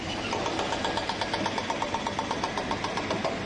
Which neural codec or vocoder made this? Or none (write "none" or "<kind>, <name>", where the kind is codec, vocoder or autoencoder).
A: vocoder, BigVGAN v2